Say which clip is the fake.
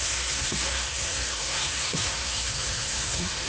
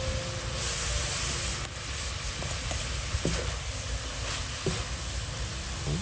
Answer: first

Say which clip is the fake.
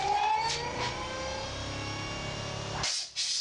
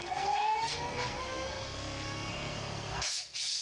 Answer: second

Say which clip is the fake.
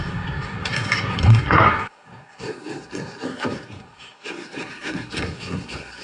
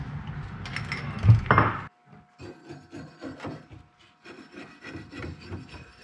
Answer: first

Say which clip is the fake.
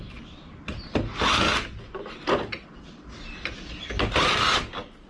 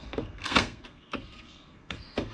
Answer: second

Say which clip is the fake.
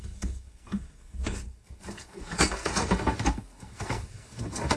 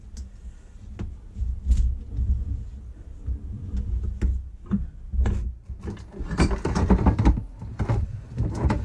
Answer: first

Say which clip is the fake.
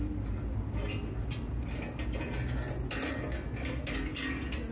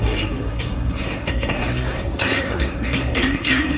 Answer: second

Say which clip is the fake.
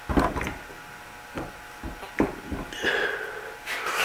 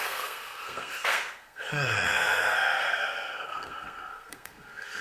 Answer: second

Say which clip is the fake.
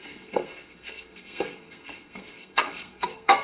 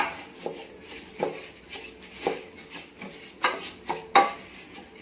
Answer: first